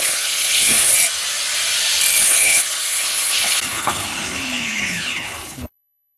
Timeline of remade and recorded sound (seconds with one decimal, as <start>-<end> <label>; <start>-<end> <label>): 0.0-0.9 remade; 0.9-2.2 recorded; 2.2-6.2 remade